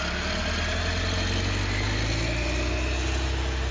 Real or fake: real